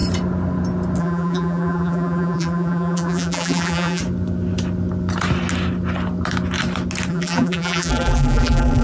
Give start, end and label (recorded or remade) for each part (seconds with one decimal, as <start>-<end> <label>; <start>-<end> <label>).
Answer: 0.0-1.0 recorded; 1.0-4.0 remade; 4.0-7.1 recorded; 7.1-8.8 remade